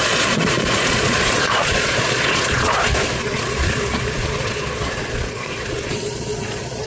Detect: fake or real fake